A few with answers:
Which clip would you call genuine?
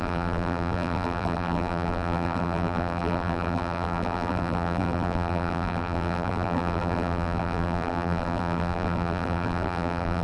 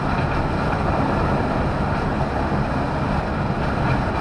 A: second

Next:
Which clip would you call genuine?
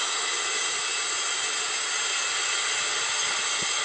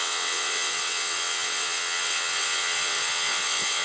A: first